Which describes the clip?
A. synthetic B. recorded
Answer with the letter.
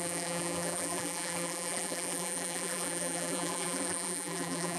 A